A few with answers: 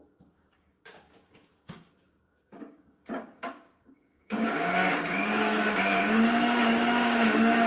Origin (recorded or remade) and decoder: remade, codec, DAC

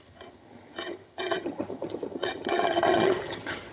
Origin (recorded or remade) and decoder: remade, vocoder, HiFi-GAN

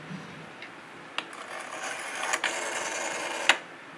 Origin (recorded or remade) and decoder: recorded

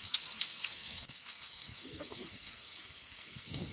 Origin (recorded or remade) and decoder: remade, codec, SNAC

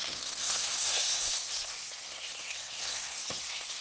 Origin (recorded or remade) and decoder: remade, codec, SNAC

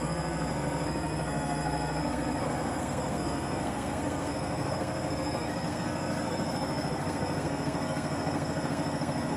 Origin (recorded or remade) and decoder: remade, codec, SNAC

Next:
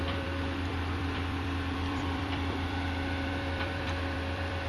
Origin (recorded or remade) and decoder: remade, vocoder, BigVGAN v2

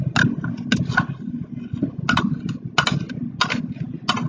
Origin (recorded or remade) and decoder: recorded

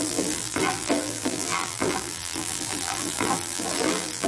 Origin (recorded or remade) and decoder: remade, vocoder, BigVGAN v2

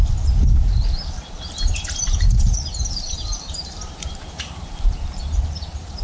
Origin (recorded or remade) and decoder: remade, vocoder, BigVGAN v2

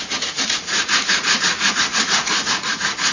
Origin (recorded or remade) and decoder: remade, vocoder, Vocos